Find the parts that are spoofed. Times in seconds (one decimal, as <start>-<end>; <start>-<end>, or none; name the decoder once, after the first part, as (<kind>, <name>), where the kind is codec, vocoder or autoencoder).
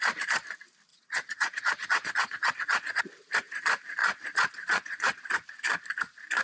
0.9-3.0 (vocoder, Vocos); 4.0-5.3